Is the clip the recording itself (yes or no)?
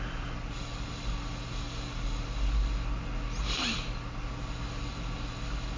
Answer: yes